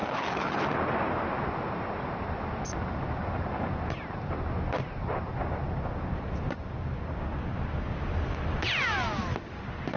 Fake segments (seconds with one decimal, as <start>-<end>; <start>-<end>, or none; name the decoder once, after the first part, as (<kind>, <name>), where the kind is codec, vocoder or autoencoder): 0.0-0.6 (codec, HILCodec)